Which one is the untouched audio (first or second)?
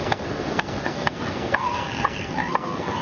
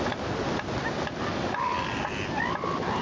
second